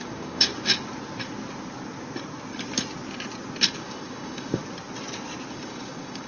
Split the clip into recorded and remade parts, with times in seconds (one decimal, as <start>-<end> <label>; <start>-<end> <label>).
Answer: 0.0-0.5 remade; 0.5-3.8 recorded; 3.8-4.6 remade; 4.6-5.5 recorded; 5.5-6.3 remade